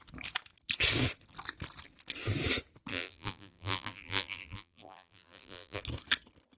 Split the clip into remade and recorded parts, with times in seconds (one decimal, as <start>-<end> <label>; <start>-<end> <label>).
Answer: 0.0-2.9 recorded; 2.9-5.8 remade; 5.8-6.6 recorded

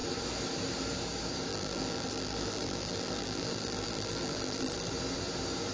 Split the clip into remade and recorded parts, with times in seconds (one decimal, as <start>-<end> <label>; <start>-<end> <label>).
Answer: 0.0-1.5 recorded; 1.5-4.9 remade; 4.9-5.7 recorded

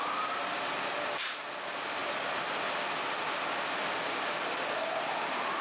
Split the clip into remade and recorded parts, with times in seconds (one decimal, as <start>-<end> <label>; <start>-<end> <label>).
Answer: 0.0-5.6 recorded

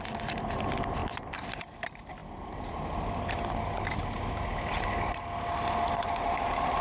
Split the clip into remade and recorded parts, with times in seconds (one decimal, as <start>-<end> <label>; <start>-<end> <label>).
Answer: 0.0-1.0 recorded; 1.0-1.5 remade; 1.5-6.8 recorded

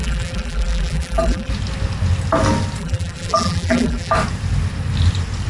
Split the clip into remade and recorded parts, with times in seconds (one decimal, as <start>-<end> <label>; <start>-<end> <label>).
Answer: 0.0-1.5 remade; 1.5-2.8 recorded; 2.8-4.1 remade; 4.1-5.5 recorded

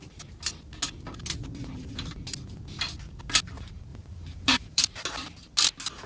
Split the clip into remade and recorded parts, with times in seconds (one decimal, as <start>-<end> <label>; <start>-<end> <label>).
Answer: 0.0-3.9 recorded; 3.9-4.8 remade; 4.8-6.1 recorded

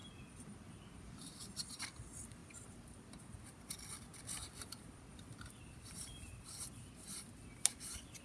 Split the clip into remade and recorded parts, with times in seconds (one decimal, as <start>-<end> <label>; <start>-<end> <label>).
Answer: 0.0-2.4 recorded; 2.4-7.3 remade; 7.3-8.2 recorded

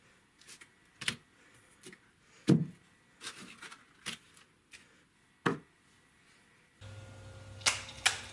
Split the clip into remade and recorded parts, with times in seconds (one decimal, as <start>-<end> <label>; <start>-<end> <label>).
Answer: 0.0-8.3 recorded